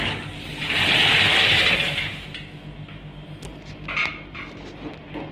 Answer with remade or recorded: recorded